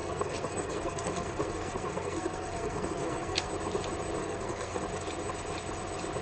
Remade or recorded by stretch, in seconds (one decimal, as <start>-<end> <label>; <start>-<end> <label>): 0.0-3.5 remade; 3.5-4.2 recorded; 4.2-4.8 remade; 4.8-6.2 recorded